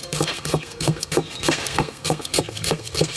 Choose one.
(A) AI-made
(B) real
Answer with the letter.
A